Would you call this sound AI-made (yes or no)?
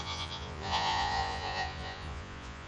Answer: yes